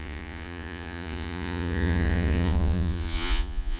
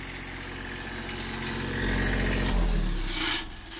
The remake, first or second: first